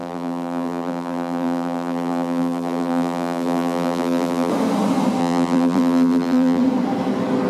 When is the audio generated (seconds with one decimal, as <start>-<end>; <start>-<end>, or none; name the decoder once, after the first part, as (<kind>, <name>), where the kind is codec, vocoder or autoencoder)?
0.0-4.5 (vocoder, BigVGAN v2); 5.2-6.6